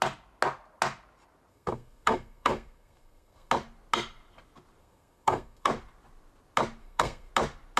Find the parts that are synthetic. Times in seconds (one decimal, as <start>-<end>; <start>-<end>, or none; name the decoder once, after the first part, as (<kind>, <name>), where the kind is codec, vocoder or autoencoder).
1.5-3.5 (codec, SNAC); 4.8-5.7; 6.8-7.3